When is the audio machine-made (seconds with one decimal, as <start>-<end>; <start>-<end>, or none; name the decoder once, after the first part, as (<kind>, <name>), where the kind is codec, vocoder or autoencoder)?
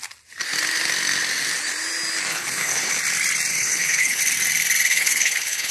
2.3-3.0 (codec, HILCodec); 3.5-4.2; 4.9-5.7